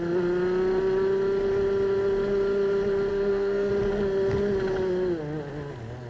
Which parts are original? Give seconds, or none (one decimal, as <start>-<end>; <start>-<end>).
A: 0.0-3.1; 3.7-6.1

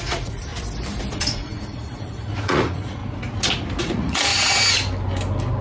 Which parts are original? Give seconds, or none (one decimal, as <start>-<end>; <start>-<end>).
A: 0.5-1.1; 3.0-3.8; 4.3-5.6

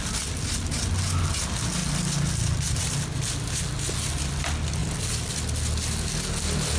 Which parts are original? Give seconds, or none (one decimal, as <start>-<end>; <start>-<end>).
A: 0.0-4.8; 5.3-6.8

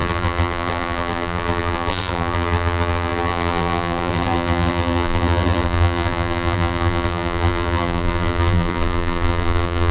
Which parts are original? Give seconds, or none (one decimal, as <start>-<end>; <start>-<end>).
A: none

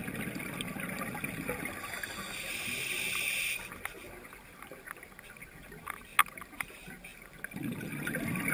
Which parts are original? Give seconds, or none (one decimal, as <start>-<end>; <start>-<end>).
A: 0.0-8.5